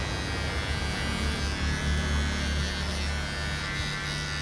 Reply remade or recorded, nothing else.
recorded